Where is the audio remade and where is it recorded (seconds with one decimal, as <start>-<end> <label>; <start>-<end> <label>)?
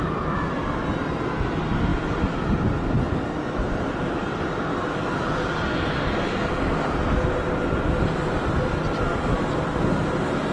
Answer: 0.0-10.5 recorded